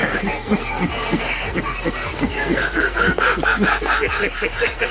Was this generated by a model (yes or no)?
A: yes